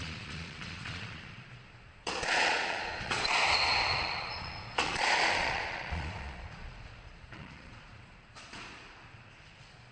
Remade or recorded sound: remade